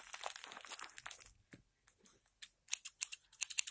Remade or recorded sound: recorded